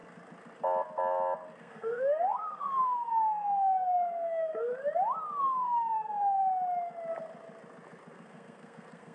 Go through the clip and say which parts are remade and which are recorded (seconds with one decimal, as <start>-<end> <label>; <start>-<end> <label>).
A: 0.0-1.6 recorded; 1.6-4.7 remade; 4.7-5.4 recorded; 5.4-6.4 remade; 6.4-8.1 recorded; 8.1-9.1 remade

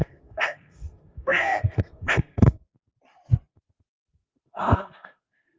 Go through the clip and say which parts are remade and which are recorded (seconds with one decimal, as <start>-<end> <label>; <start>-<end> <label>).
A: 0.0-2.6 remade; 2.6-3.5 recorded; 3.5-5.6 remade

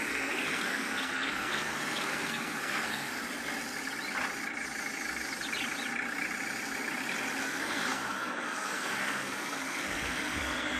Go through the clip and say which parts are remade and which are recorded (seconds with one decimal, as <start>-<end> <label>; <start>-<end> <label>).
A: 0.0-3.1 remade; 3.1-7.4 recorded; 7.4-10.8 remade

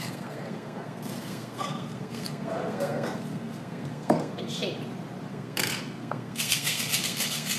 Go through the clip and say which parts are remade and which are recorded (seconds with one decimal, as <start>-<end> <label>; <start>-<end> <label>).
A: 0.0-4.6 remade; 4.6-5.3 recorded; 5.3-7.6 remade

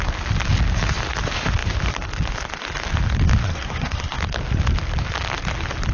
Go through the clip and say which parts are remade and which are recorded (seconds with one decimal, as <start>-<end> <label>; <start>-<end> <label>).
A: 0.0-3.4 recorded; 3.4-4.2 remade; 4.2-5.9 recorded

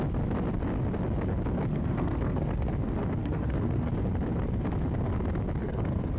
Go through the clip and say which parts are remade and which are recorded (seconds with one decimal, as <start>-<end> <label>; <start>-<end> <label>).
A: 0.0-1.7 recorded; 1.7-2.7 remade; 2.7-3.2 recorded; 3.2-3.9 remade; 3.9-5.6 recorded; 5.6-6.2 remade

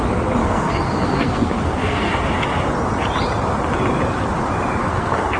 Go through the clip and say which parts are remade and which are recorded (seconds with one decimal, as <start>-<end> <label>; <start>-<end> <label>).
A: 0.0-0.4 recorded; 0.4-2.2 remade; 2.2-4.8 recorded; 4.8-5.4 remade